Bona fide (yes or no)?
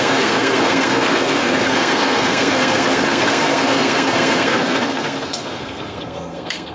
no